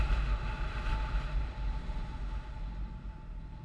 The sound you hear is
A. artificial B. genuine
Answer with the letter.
B